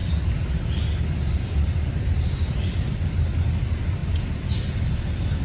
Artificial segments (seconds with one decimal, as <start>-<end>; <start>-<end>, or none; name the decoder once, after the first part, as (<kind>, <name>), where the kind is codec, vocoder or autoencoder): none